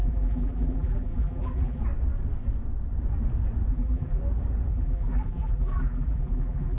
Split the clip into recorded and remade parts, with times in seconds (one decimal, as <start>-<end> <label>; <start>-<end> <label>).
0.0-1.8 remade; 1.8-3.7 recorded; 3.7-4.2 remade; 4.2-4.7 recorded; 4.7-6.8 remade